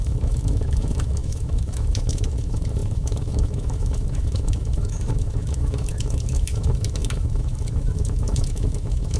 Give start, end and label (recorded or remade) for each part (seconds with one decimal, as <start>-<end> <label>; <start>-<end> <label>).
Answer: 0.0-9.2 remade